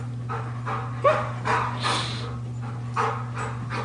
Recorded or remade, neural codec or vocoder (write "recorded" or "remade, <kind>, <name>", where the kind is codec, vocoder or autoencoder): recorded